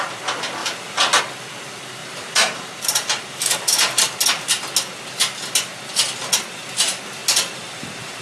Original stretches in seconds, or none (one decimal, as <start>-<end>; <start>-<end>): 0.0-0.6; 1.2-2.0; 4.0-7.2